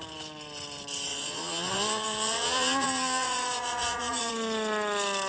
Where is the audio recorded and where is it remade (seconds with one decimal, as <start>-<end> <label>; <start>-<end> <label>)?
0.0-1.1 recorded; 1.1-4.3 remade; 4.3-5.3 recorded